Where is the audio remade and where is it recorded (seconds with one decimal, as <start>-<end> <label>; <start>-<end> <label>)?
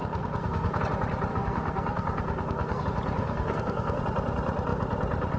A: 0.0-0.8 remade; 0.8-1.3 recorded; 1.3-2.8 remade; 2.8-3.2 recorded; 3.2-4.0 remade; 4.0-5.4 recorded